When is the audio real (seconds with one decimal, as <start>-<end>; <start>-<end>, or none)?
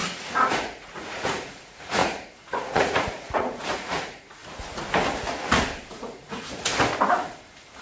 4.4-5.9; 6.7-7.8